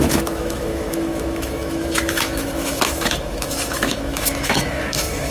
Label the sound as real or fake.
fake